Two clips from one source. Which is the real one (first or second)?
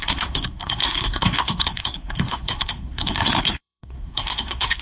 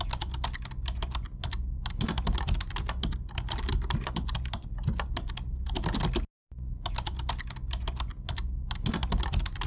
second